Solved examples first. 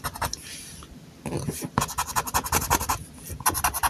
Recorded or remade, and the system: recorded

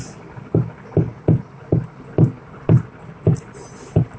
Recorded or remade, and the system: recorded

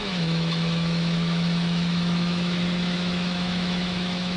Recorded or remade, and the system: remade, autoencoder, DAC-VAE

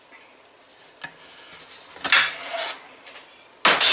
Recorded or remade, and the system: recorded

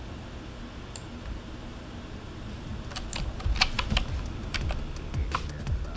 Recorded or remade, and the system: recorded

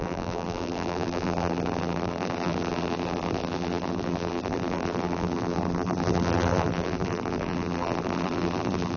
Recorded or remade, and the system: remade, vocoder, BigVGAN v2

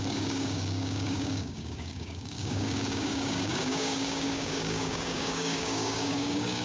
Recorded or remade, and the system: remade, codec, DAC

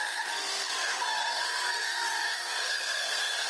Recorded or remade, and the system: remade, codec, SNAC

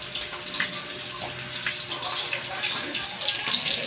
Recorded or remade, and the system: recorded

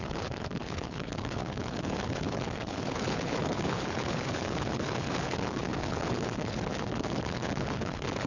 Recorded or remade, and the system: remade, codec, HILCodec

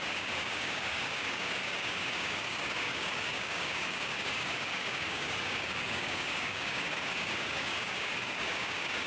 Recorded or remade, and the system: remade, codec, DAC